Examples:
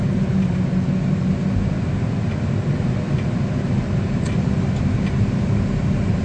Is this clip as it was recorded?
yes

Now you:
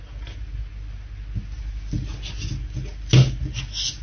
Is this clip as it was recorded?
yes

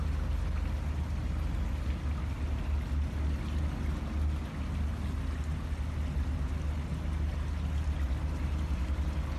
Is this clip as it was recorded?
yes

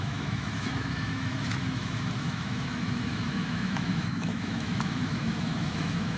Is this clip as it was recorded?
no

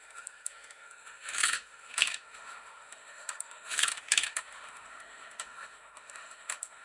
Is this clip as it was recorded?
no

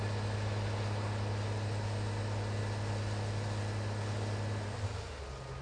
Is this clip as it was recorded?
yes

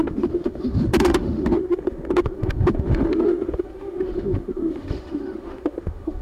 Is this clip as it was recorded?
no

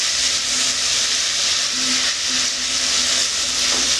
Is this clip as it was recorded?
yes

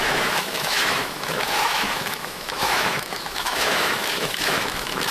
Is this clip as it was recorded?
no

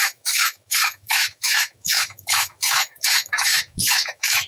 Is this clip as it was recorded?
no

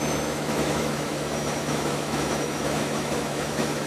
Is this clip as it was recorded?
no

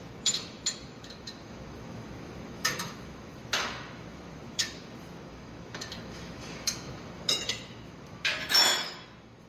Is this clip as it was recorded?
no